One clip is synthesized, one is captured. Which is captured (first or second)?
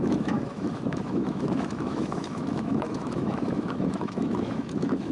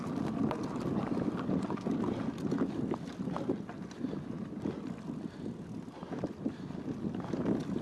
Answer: second